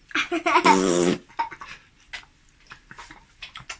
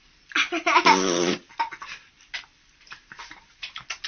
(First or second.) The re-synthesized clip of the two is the second